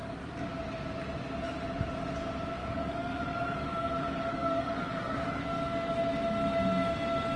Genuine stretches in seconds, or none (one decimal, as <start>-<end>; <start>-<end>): 0.5-2.6; 5.3-7.4